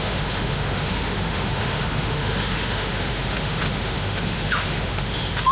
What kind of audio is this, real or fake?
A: fake